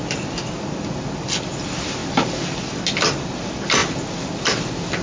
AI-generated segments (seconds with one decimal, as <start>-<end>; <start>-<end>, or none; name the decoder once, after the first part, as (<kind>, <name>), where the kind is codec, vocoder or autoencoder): none